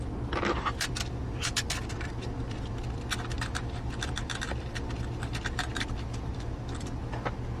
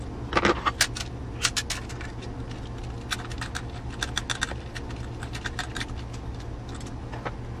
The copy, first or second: first